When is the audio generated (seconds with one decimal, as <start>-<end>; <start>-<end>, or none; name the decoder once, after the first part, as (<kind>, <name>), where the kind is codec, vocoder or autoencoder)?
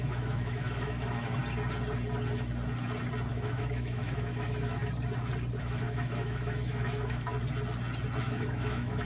0.0-1.4 (autoencoder, DAC-VAE); 3.3-4.8; 5.6-7.3; 8.2-9.0